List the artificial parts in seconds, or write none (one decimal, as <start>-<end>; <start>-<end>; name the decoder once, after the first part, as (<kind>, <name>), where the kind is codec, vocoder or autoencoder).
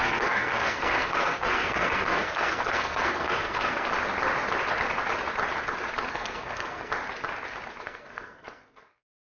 0.0-3.9 (codec, SNAC); 6.1-6.9; 7.8-9.2